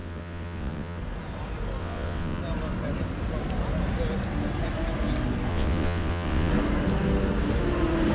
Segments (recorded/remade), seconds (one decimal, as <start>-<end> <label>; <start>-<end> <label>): 0.0-1.0 remade; 1.0-1.8 recorded; 1.8-2.4 remade; 2.4-5.5 recorded; 5.5-6.5 remade; 6.5-8.1 recorded